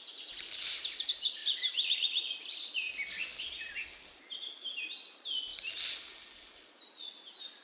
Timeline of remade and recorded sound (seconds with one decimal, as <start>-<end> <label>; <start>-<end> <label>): 0.0-1.4 recorded; 1.4-2.3 remade; 2.3-7.6 recorded

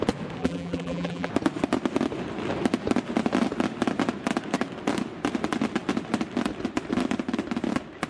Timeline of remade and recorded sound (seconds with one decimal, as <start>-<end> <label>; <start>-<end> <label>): 0.0-0.4 recorded; 0.4-1.3 remade; 1.3-8.1 recorded

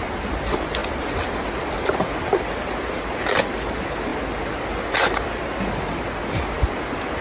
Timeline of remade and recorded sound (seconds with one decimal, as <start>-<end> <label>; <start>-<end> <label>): 0.0-0.8 remade; 0.8-1.3 recorded; 1.3-4.1 remade; 4.1-7.2 recorded

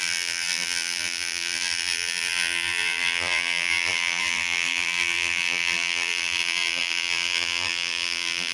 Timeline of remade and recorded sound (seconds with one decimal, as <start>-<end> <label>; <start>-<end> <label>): 0.0-8.5 remade

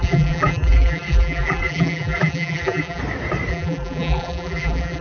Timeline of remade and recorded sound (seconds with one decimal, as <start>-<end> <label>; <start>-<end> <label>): 0.0-3.0 remade; 3.0-3.5 recorded; 3.5-5.0 remade

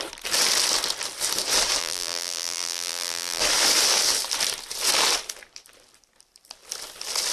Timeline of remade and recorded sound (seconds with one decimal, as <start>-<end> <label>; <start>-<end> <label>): 0.0-1.8 recorded; 1.8-3.4 remade; 3.4-7.3 recorded

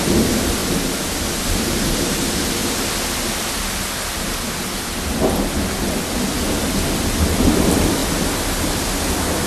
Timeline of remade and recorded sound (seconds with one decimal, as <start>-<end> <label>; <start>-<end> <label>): 0.0-0.6 remade; 0.6-1.4 recorded; 1.4-2.6 remade; 2.6-5.8 recorded; 5.8-9.5 remade